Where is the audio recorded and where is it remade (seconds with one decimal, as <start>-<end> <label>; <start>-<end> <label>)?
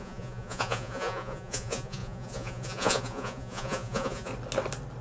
0.0-4.3 remade; 4.3-5.0 recorded